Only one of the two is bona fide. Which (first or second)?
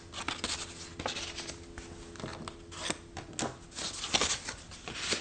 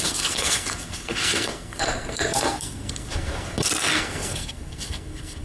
first